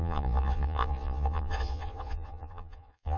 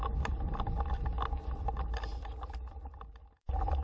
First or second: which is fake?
first